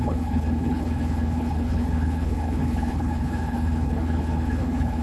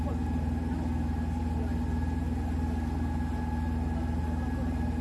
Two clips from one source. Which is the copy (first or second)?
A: first